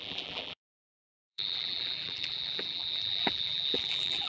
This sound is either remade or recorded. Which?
remade